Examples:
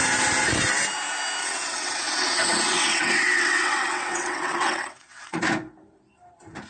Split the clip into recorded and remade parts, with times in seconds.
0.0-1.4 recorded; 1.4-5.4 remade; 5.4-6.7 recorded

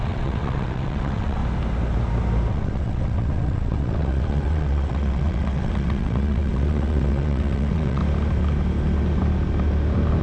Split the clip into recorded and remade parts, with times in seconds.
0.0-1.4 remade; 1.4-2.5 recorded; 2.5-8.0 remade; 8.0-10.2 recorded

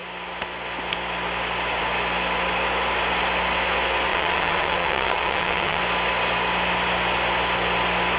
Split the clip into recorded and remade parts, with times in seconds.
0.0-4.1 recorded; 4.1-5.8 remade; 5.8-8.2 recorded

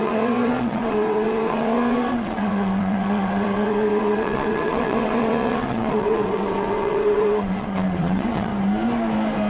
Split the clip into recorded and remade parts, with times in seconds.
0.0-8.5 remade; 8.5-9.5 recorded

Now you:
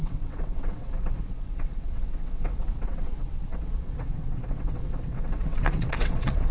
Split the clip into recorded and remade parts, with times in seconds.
0.0-6.5 remade